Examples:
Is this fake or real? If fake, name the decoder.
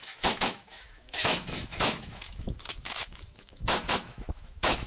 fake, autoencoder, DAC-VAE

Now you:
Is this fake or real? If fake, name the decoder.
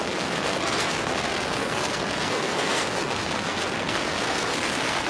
fake, codec, SNAC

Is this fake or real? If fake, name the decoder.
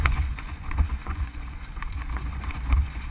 fake, vocoder, Vocos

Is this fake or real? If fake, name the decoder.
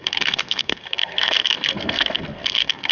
fake, codec, SNAC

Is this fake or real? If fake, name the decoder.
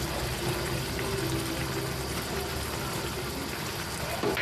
real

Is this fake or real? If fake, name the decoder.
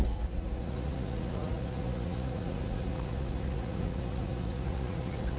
fake, vocoder, Vocos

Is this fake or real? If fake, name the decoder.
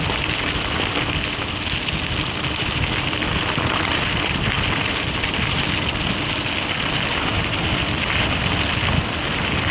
real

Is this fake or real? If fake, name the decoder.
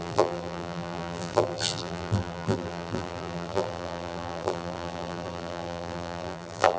fake, vocoder, BigVGAN v2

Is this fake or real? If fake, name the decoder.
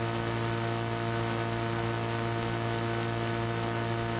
real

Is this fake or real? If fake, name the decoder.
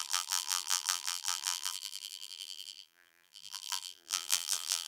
fake, vocoder, BigVGAN v2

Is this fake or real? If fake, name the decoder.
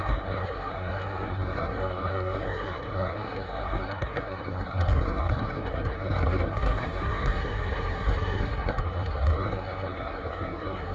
fake, codec, SNAC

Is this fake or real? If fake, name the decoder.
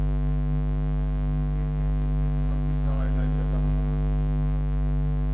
fake, codec, DAC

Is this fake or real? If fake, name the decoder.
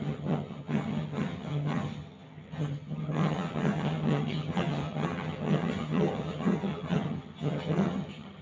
fake, vocoder, HiFi-GAN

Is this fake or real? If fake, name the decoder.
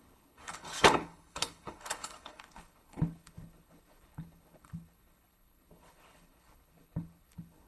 fake, codec, HILCodec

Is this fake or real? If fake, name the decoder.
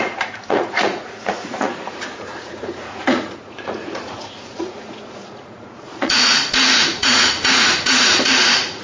fake, vocoder, Vocos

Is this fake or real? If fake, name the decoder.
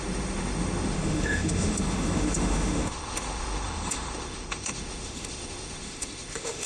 fake, autoencoder, DAC-VAE